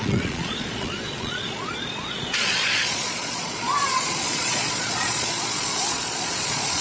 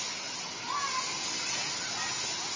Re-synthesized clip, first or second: first